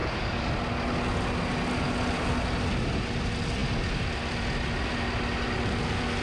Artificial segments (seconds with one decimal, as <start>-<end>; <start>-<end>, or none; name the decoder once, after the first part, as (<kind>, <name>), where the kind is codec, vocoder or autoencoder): 0.0-0.5 (codec, DAC)